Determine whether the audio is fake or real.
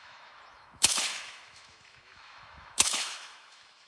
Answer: fake